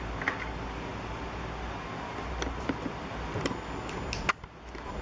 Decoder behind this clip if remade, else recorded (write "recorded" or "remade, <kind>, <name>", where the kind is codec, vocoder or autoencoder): recorded